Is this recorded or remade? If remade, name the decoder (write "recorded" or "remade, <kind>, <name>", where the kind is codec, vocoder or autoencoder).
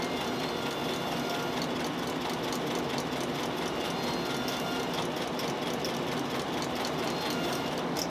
recorded